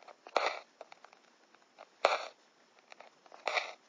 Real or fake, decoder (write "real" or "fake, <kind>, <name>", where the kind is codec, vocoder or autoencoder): real